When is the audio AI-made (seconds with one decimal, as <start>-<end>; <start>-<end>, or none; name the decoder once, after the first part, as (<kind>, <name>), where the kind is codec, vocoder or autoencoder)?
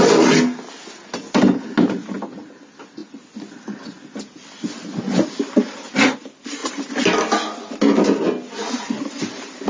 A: none